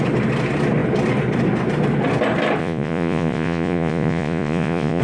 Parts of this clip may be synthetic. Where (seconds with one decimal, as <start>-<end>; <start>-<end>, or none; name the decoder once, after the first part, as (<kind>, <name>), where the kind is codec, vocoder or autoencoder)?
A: 2.6-5.0 (vocoder, Vocos)